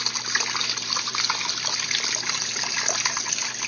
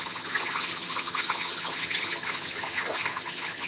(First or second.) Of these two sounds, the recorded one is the first